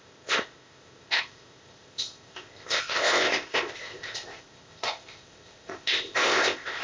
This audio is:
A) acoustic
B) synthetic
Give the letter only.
B